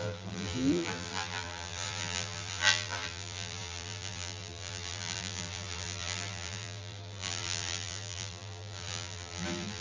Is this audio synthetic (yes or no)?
yes